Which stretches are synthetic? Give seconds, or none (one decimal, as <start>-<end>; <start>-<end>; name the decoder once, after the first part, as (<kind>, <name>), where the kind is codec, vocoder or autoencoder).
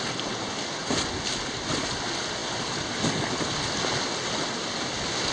none